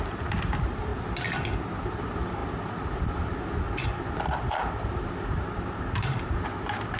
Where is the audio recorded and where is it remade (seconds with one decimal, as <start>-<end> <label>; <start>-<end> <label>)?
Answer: 0.0-0.9 remade; 0.9-1.8 recorded; 1.8-7.0 remade